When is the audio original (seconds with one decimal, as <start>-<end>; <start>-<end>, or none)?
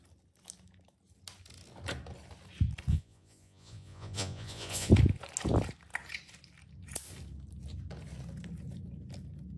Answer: 0.0-2.9; 4.9-9.6